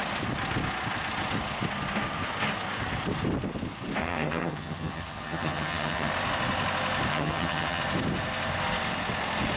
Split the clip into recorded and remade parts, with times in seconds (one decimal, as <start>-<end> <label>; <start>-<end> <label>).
0.0-4.0 recorded; 4.0-6.1 remade; 6.1-7.1 recorded; 7.1-7.8 remade; 7.8-9.6 recorded